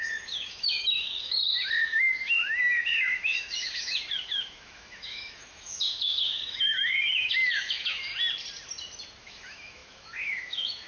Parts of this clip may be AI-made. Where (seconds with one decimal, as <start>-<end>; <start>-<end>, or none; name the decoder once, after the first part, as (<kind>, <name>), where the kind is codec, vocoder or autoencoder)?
0.0-8.1 (autoencoder, DAC-VAE); 9.2-10.9